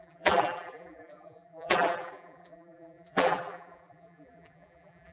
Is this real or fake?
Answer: fake